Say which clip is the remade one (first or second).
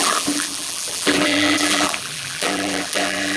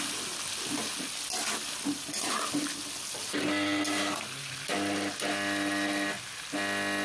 first